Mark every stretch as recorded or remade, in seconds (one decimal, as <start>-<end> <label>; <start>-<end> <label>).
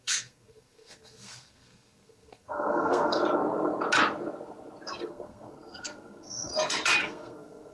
0.0-3.2 remade; 3.2-5.0 recorded; 5.0-6.5 remade; 6.5-7.0 recorded; 7.0-7.7 remade